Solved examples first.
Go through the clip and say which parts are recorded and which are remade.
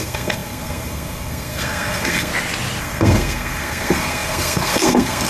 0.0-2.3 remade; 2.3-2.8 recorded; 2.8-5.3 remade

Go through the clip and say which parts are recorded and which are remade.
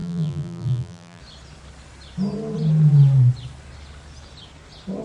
0.0-1.2 remade; 1.2-5.0 recorded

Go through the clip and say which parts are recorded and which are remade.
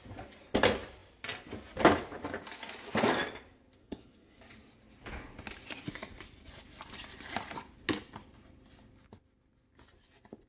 0.0-3.8 recorded; 3.8-4.4 remade; 4.4-10.5 recorded